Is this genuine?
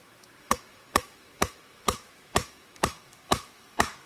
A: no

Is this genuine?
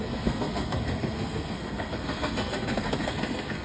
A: no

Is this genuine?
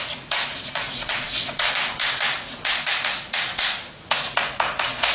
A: no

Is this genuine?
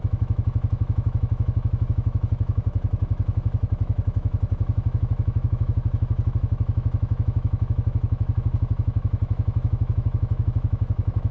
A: no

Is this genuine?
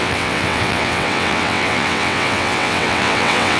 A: no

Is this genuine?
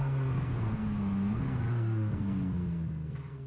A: no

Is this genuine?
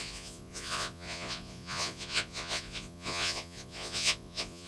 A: no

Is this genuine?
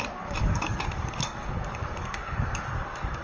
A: no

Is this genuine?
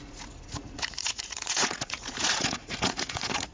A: no